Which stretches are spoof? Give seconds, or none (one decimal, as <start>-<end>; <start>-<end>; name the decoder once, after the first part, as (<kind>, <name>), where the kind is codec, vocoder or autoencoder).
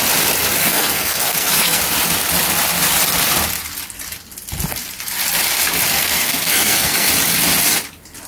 0.6-1.8 (codec, SNAC); 5.9-7.1